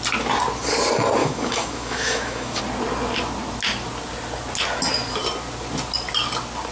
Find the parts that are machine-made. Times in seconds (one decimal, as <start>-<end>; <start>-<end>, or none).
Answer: 1.2-2.6